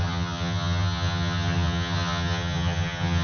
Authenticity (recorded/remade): remade